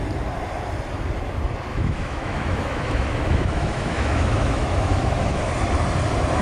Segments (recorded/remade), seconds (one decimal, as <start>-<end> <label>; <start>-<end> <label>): 0.0-1.7 recorded; 1.7-5.5 remade; 5.5-6.4 recorded